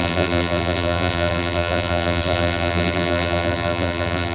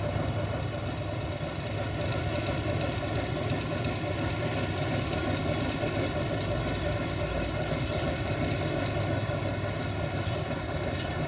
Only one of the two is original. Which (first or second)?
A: second